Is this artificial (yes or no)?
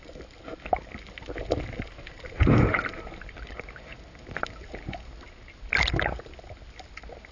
no